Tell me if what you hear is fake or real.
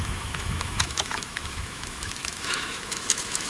fake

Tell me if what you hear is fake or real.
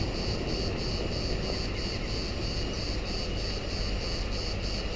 real